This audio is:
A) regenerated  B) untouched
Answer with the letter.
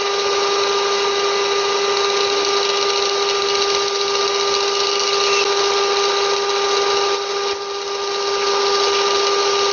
B